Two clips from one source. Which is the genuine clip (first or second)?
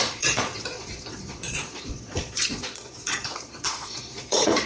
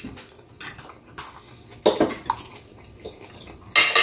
second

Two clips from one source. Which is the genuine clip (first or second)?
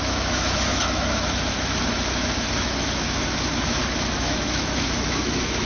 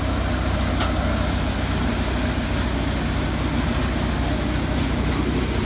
second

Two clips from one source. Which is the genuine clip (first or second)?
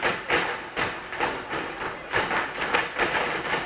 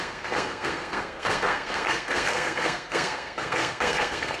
first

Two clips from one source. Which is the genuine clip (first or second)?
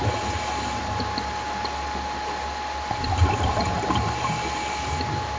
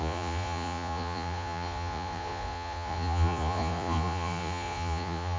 first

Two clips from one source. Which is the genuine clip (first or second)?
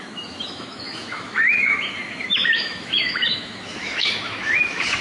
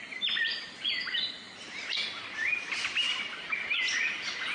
second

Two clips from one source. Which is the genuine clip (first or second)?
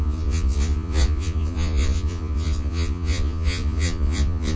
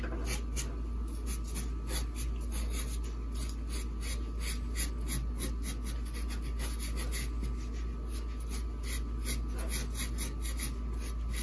second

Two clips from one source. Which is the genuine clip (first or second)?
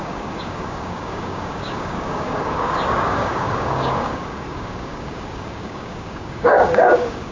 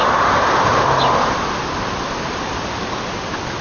second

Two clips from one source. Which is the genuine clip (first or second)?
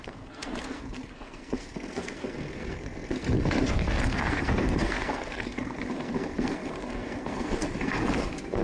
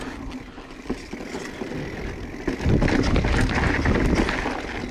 second